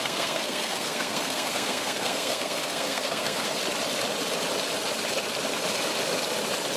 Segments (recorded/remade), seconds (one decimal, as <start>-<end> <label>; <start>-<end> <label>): 0.0-3.6 remade; 3.6-6.8 recorded